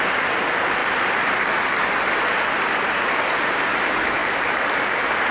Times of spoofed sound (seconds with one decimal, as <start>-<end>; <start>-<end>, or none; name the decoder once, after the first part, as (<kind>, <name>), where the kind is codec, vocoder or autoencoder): 0.8-3.8 (vocoder, BigVGAN v2); 4.2-5.3